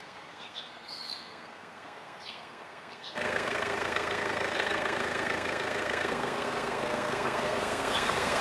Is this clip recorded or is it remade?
remade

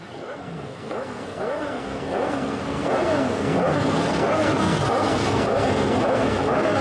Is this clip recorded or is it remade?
remade